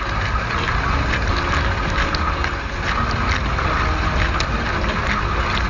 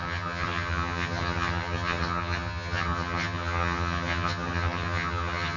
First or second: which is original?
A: first